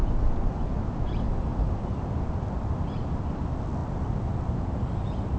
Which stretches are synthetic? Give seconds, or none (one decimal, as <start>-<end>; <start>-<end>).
none